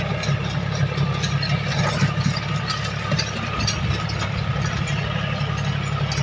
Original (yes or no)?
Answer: yes